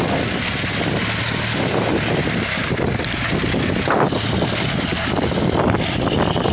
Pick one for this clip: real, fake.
real